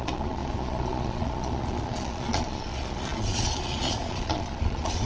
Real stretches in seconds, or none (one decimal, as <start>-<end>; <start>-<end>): none